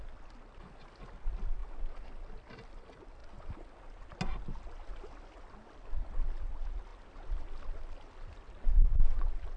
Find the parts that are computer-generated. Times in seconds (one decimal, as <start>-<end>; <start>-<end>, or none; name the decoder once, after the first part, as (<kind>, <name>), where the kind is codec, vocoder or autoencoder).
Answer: none